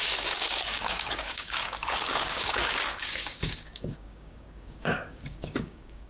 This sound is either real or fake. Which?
fake